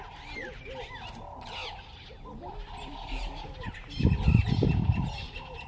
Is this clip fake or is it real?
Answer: real